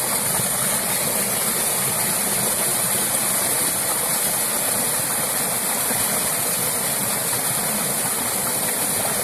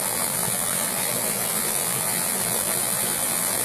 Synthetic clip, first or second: second